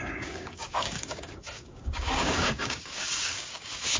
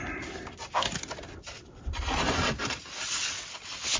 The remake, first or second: first